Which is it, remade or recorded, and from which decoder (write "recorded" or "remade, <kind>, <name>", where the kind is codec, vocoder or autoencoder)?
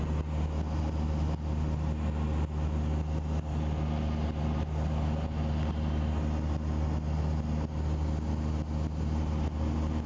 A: recorded